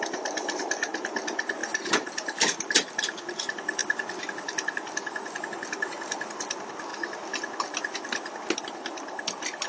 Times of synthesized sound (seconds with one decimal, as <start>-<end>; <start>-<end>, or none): 1.6-2.8